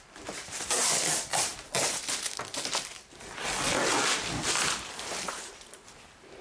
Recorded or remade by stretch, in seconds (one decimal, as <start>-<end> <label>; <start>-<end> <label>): 0.0-1.5 remade; 1.5-4.0 recorded; 4.0-6.4 remade